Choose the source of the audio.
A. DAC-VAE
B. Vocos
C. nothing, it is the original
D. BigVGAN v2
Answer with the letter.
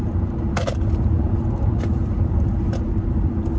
D